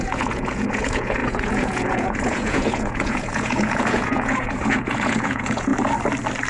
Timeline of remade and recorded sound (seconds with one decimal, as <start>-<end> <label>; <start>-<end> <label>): 0.0-5.7 remade; 5.7-6.5 recorded